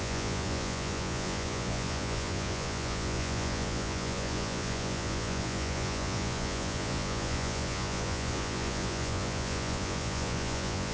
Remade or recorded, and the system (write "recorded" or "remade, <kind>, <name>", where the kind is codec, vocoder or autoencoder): remade, vocoder, Vocos